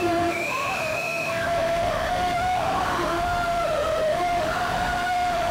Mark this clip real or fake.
fake